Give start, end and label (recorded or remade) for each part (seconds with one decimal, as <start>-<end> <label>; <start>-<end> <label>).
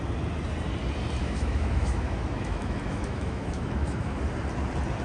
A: 0.0-1.2 recorded; 1.2-4.2 remade; 4.2-5.0 recorded